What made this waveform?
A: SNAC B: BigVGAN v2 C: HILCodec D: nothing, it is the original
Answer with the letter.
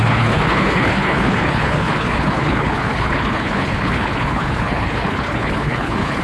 C